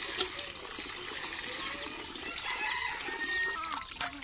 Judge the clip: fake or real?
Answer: real